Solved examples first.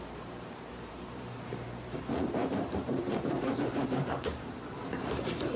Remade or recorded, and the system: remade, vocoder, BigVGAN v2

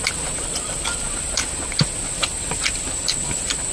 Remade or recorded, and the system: recorded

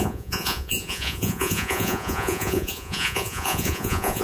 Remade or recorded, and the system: remade, vocoder, Vocos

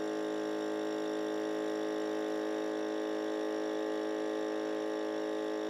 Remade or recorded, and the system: recorded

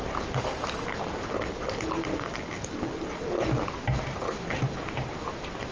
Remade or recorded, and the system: recorded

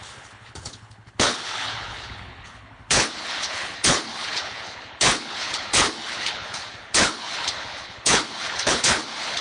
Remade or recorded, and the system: remade, codec, HILCodec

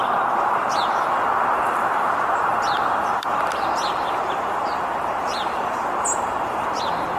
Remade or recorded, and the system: recorded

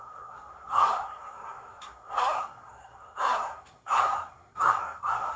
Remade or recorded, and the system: remade, codec, SNAC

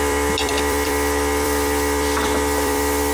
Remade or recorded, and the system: remade, vocoder, BigVGAN v2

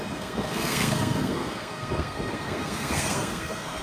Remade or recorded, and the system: remade, codec, SNAC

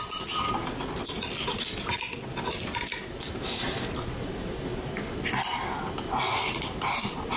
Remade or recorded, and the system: recorded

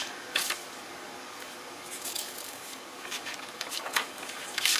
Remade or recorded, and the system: remade, codec, DAC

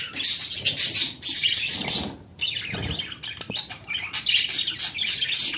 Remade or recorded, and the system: recorded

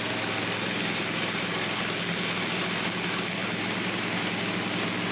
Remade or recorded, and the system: recorded